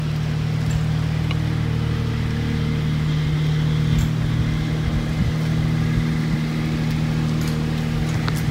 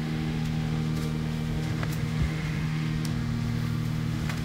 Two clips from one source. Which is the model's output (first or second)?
second